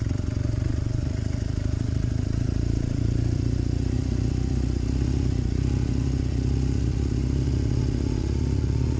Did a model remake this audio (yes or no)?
yes